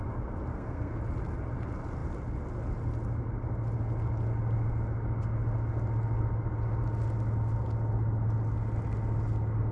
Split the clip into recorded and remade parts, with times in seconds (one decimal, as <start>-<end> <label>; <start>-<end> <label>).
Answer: 0.0-0.5 recorded; 0.5-1.0 remade; 1.0-9.7 recorded